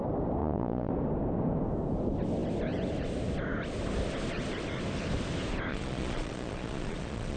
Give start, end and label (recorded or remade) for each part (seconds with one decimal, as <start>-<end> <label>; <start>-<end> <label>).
0.0-0.4 recorded; 0.4-0.9 remade; 0.9-5.7 recorded; 5.7-7.4 remade